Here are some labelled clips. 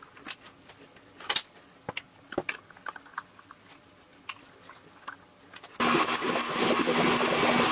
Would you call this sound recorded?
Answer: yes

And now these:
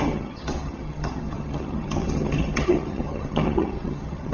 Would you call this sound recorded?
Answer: no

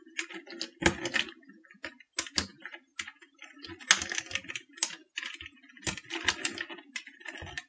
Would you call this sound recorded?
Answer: yes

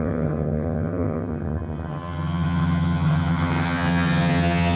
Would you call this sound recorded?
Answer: no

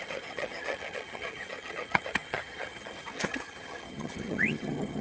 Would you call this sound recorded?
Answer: no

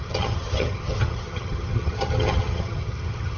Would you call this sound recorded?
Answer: no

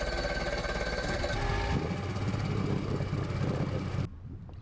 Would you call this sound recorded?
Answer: yes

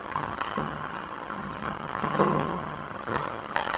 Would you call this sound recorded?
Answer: no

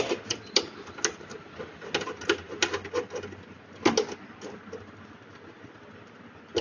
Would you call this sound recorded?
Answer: yes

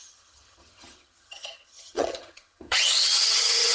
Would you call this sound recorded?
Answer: no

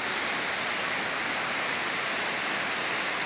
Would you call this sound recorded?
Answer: yes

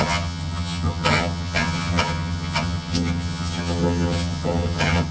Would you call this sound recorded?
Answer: no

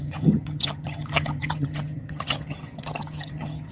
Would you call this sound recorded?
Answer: no